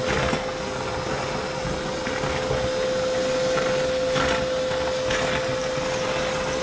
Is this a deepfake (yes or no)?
no